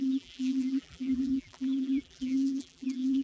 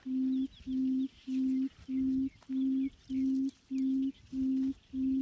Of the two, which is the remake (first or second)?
first